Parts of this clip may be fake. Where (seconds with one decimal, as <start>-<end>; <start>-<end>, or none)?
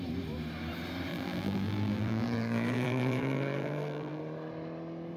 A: 1.1-4.2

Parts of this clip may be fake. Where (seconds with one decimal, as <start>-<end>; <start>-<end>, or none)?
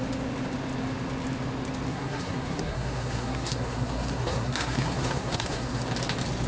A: 1.9-5.8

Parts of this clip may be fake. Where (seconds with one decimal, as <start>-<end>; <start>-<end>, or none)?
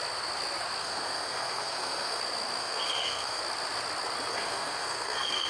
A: 0.8-2.2; 2.6-3.4; 4.3-5.5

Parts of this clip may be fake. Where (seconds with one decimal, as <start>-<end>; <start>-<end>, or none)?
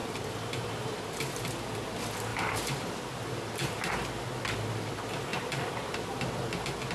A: 0.0-1.4; 2.3-3.0